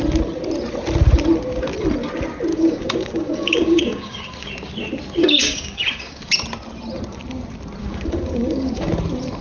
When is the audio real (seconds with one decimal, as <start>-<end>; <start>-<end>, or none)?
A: 0.0-2.5; 4.5-5.2; 6.3-7.8; 8.9-9.4